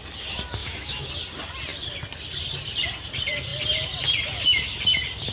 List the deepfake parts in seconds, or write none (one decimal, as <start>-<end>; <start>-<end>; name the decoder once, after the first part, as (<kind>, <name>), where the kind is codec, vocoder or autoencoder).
0.6-1.1 (autoencoder, DAC-VAE)